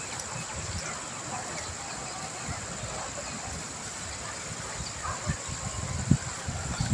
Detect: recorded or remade recorded